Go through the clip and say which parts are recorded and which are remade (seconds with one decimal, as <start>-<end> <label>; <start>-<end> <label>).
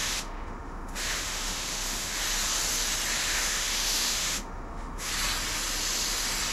0.0-2.2 remade; 2.2-3.2 recorded; 3.2-5.1 remade; 5.1-6.5 recorded